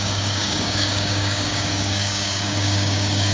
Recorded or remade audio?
remade